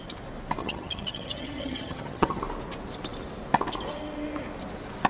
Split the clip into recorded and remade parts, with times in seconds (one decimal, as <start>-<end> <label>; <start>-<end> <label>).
0.0-0.6 recorded; 0.6-2.4 remade; 2.4-5.1 recorded